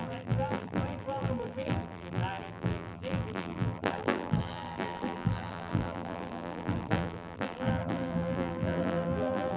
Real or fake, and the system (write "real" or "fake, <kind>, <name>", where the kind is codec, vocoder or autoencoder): fake, vocoder, BigVGAN v2